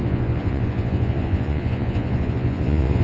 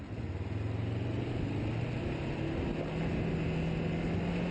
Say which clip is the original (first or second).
second